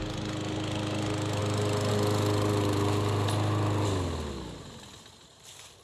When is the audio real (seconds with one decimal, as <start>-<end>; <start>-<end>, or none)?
0.0-5.8